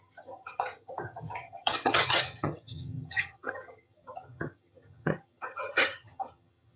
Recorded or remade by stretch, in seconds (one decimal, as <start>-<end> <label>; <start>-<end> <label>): 0.0-6.8 remade